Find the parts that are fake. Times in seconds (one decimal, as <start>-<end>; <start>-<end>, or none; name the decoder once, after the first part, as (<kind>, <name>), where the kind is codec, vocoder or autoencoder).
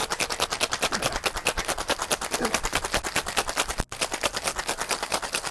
none